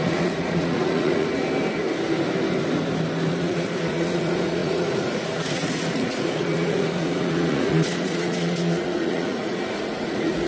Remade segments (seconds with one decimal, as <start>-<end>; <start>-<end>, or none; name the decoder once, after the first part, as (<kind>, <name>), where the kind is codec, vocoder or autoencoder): 0.0-1.3 (vocoder, Vocos); 3.3-10.5